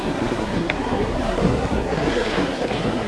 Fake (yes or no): yes